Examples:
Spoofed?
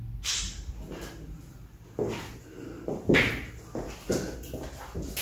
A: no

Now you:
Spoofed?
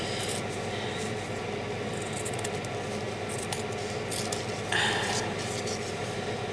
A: no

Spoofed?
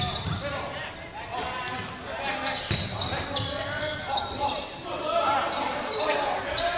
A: no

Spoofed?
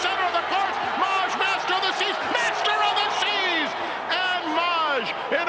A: no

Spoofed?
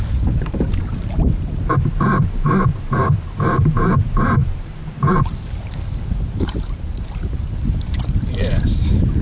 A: yes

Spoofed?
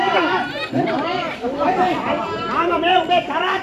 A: yes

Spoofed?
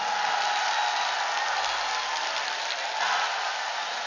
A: no